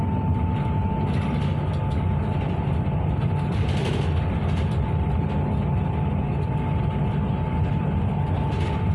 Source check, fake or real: real